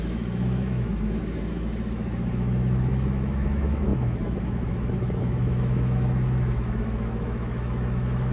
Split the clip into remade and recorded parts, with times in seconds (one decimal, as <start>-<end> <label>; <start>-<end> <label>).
0.0-8.3 remade